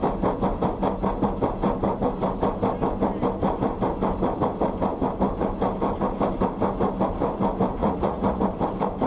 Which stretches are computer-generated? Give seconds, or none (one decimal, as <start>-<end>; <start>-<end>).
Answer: 7.8-8.4